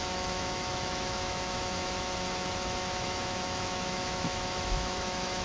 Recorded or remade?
remade